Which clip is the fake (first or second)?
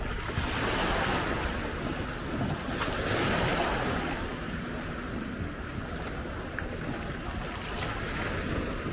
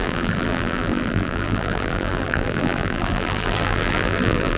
second